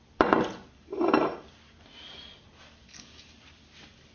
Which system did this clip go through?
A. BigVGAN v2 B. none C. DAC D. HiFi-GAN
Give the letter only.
B